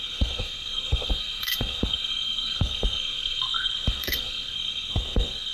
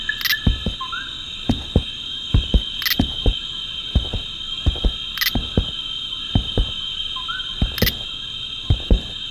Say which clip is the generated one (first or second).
first